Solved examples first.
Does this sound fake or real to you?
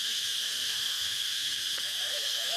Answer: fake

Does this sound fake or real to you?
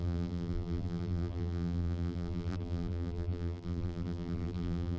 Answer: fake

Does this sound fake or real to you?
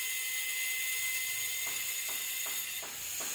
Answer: real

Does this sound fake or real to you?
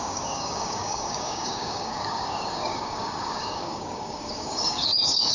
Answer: fake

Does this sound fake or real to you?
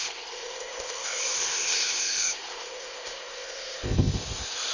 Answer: fake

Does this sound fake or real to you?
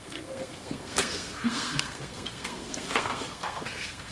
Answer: fake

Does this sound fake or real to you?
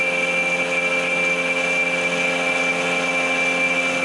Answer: real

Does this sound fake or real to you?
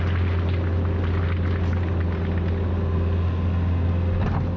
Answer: real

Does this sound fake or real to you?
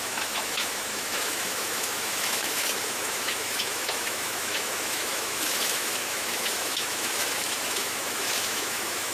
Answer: fake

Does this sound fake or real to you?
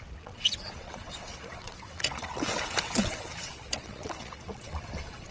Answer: fake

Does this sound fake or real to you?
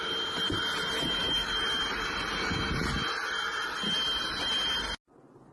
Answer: real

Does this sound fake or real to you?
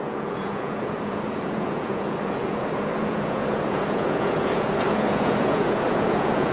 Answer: fake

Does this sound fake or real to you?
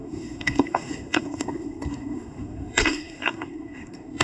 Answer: fake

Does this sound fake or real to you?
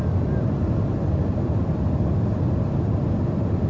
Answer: real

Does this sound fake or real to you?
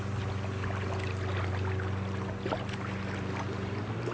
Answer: real